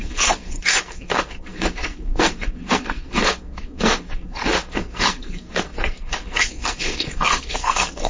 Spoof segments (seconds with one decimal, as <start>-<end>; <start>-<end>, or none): 0.0-8.1